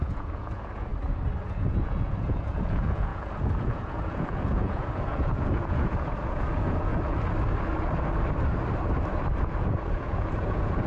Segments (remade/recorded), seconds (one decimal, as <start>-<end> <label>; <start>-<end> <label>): 0.0-0.9 remade; 0.9-1.4 recorded; 1.4-6.9 remade; 6.9-9.4 recorded; 9.4-10.9 remade